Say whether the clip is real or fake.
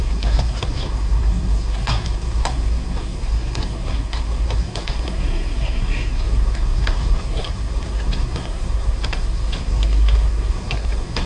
fake